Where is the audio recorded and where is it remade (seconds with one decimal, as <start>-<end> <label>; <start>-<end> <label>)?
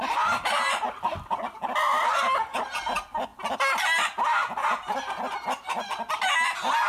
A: 0.0-6.9 recorded